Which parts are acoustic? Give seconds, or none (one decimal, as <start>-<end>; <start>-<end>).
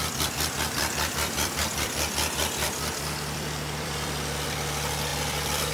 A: none